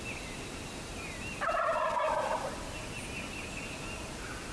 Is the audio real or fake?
real